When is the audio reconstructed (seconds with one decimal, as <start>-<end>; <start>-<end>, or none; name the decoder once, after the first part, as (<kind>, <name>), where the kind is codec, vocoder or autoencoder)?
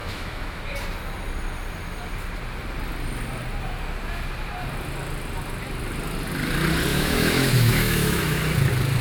0.0-0.6 (autoencoder, DAC-VAE); 6.9-8.4